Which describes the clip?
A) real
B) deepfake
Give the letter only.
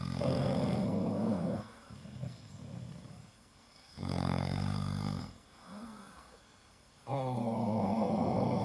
B